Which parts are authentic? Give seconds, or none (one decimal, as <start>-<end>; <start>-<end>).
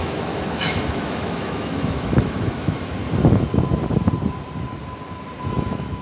3.0-5.5